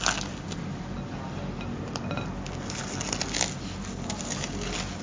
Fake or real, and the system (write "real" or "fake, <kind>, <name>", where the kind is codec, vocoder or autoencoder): real